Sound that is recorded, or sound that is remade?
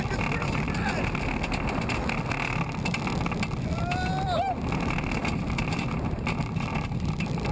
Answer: recorded